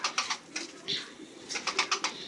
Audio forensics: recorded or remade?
recorded